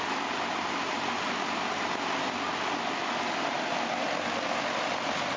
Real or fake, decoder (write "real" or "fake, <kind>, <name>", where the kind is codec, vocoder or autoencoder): real